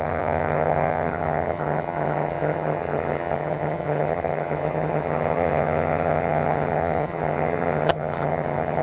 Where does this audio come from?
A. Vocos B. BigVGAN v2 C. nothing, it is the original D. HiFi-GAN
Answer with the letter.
D